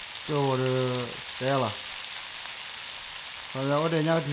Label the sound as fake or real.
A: real